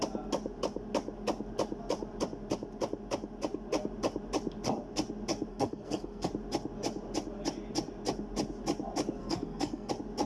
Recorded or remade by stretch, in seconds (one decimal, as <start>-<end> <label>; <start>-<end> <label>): 0.0-5.5 recorded; 5.5-6.3 remade; 6.3-9.2 recorded; 9.2-9.9 remade; 9.9-10.3 recorded